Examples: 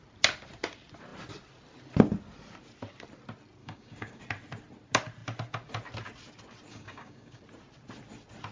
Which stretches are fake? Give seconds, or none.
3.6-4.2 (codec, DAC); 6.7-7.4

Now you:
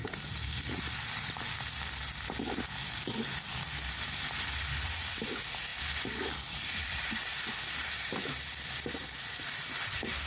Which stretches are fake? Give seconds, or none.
none

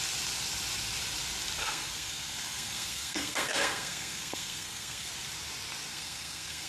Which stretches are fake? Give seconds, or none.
1.6-5.1 (codec, SNAC); 5.9-6.7